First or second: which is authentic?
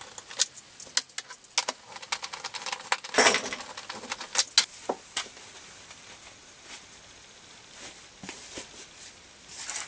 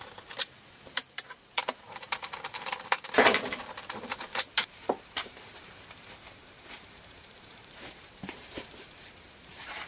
first